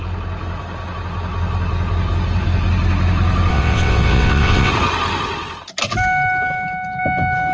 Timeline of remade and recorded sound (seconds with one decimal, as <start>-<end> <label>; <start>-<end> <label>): 0.0-3.5 recorded; 3.5-4.7 remade; 4.7-7.5 recorded